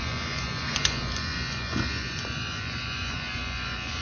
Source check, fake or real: fake